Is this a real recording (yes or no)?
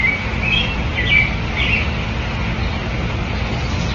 yes